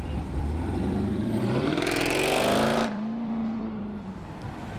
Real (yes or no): no